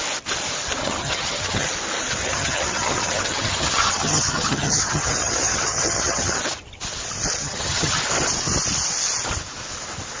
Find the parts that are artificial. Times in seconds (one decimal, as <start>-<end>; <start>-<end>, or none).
0.8-1.7; 2.2-6.4; 7.4-8.0